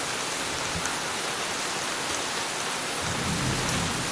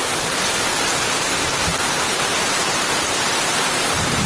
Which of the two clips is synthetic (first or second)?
second